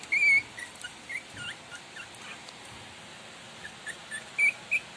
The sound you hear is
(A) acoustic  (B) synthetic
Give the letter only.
A